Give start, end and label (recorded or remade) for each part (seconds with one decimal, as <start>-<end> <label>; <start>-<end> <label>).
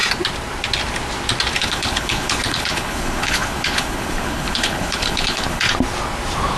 0.0-1.6 recorded; 1.6-5.6 remade; 5.6-6.6 recorded